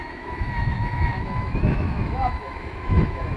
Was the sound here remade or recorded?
remade